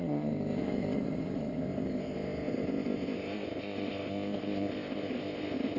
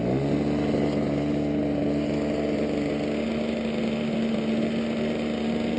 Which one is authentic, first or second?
second